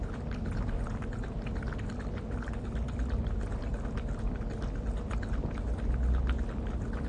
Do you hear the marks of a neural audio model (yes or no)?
no